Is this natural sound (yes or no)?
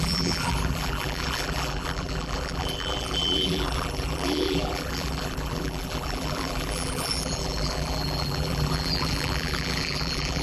no